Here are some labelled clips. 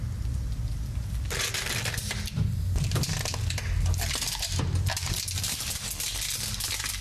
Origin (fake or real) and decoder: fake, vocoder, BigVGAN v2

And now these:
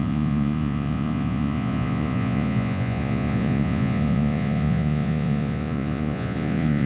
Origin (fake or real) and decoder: fake, vocoder, Vocos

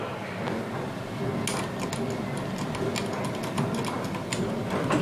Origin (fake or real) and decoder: real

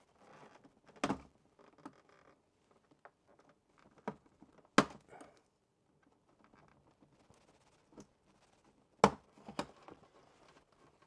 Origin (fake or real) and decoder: real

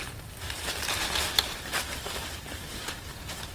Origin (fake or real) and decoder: fake, vocoder, BigVGAN v2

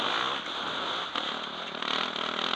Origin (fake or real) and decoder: real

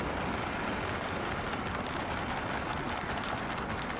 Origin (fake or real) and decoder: real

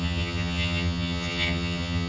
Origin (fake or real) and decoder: fake, vocoder, HiFi-GAN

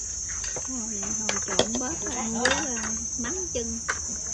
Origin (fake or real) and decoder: real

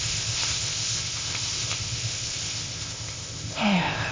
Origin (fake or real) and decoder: fake, codec, ZipCodec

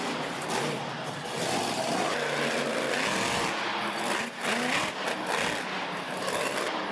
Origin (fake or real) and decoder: real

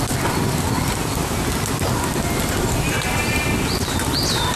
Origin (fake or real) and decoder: real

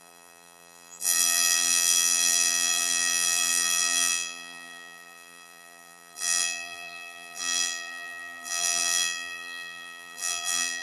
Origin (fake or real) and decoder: fake, vocoder, BigVGAN v2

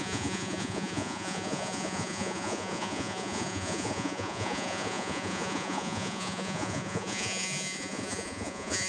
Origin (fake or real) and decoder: fake, vocoder, Vocos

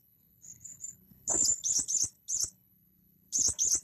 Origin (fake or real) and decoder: fake, codec, HILCodec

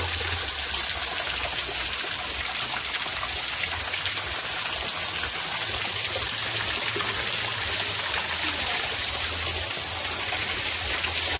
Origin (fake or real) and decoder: real